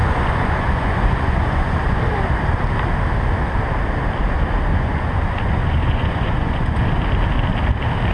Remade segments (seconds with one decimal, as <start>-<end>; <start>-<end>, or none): 0.0-2.0; 4.7-6.9